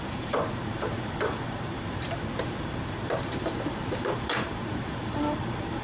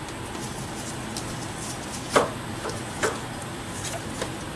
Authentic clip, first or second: second